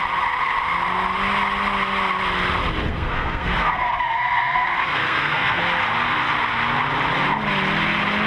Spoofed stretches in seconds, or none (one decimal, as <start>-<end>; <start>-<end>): 2.9-5.6